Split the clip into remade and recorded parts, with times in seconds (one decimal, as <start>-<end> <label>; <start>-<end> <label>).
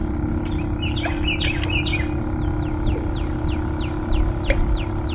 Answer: 0.0-5.1 recorded